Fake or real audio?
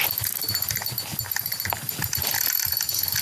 real